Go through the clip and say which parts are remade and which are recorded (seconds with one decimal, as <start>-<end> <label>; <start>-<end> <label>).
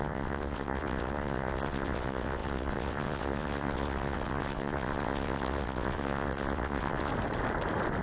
0.0-7.1 remade; 7.1-8.0 recorded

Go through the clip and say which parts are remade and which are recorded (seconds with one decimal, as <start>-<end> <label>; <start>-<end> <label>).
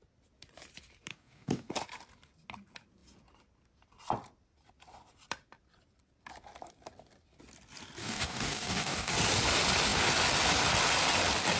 0.0-1.1 recorded; 1.1-1.7 remade; 1.7-8.0 recorded; 8.0-9.1 remade; 9.1-11.6 recorded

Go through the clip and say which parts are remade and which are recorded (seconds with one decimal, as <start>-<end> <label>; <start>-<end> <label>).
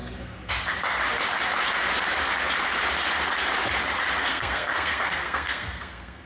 0.0-0.5 remade; 0.5-4.3 recorded; 4.3-6.3 remade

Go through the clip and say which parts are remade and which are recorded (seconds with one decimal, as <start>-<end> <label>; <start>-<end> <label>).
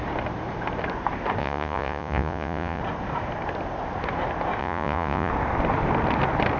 0.0-1.4 recorded; 1.4-2.8 remade; 2.8-4.6 recorded; 4.6-5.3 remade; 5.3-6.6 recorded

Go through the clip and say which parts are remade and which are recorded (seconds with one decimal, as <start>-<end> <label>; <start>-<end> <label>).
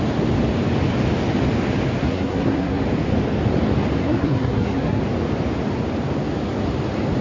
0.0-2.0 recorded; 2.0-2.8 remade; 2.8-4.0 recorded; 4.0-5.0 remade; 5.0-7.2 recorded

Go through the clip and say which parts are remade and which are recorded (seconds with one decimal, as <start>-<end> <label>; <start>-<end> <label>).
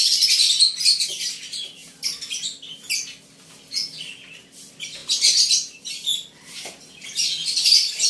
0.0-8.1 recorded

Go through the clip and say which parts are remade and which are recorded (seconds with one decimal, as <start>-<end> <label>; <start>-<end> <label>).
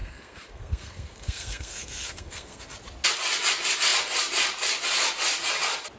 0.0-2.6 remade; 2.6-6.0 recorded